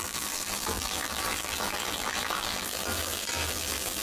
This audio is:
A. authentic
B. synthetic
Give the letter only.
B